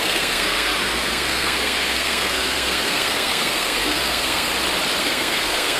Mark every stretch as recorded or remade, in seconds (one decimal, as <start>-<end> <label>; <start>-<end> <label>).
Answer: 0.0-4.5 remade; 4.5-5.0 recorded; 5.0-5.8 remade